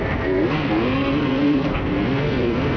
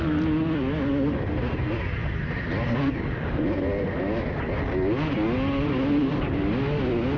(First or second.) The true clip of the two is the second